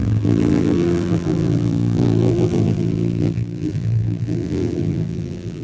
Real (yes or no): no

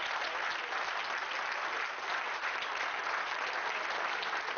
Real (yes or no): yes